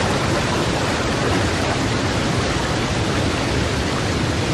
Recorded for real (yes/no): yes